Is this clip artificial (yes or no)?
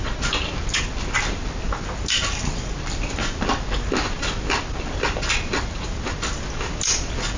no